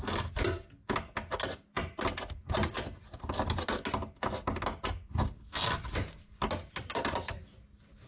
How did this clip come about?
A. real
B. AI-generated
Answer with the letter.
A